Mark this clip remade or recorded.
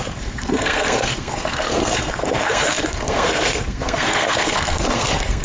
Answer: remade